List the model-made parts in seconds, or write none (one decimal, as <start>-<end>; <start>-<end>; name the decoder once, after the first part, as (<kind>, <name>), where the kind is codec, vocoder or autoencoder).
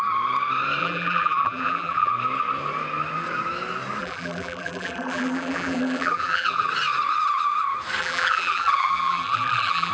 0.8-2.1 (vocoder, BigVGAN v2); 4.0-6.7; 8.0-9.9